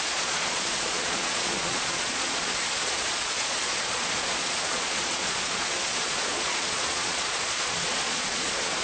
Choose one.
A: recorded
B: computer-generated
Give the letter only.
B